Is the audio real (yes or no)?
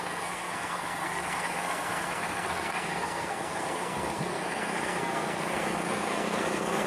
no